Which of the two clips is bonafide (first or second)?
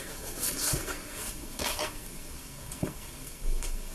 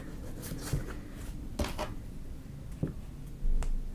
second